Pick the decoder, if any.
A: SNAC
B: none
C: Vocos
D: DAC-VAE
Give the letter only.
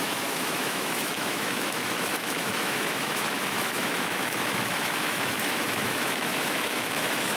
D